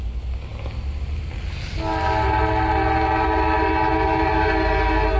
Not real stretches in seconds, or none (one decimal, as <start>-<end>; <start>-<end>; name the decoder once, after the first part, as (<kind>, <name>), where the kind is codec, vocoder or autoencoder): none